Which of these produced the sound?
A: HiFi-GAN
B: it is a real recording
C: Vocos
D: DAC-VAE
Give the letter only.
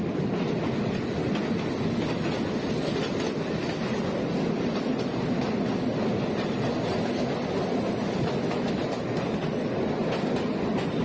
B